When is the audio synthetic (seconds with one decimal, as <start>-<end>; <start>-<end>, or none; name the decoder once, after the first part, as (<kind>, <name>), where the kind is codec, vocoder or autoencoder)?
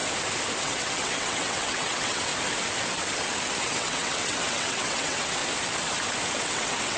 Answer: 0.6-2.3 (vocoder, WaveNeXt); 3.6-5.4; 6.4-7.0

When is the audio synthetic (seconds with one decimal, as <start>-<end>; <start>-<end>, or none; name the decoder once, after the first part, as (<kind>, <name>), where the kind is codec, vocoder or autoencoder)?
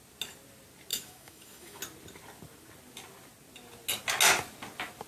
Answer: 0.9-1.8 (autoencoder, DAC-VAE)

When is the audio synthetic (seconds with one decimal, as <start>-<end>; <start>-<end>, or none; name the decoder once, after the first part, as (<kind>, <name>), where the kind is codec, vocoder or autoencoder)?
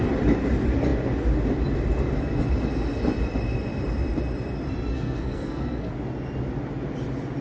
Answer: 4.9-5.9 (codec, SNAC)